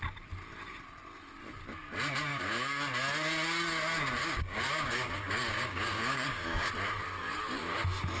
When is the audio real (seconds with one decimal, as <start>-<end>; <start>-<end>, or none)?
0.0-2.3; 2.8-4.2; 6.7-8.2